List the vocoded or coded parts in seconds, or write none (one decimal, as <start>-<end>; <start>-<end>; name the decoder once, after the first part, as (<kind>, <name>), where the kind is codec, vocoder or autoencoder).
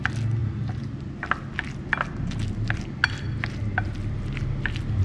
none